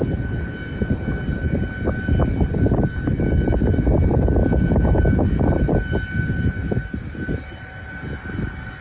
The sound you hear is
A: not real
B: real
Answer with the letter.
B